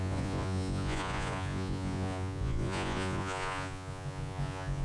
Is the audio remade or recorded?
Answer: remade